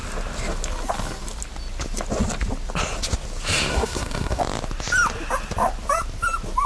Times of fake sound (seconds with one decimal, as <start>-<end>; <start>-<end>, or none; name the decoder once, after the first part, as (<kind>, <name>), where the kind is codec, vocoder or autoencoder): 3.7-4.4 (codec, SNAC)